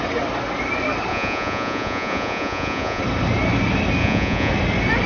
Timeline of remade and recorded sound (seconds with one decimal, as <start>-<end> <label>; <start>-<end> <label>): 0.0-1.1 recorded; 1.1-3.0 remade; 3.0-4.0 recorded; 4.0-4.5 remade; 4.5-5.1 recorded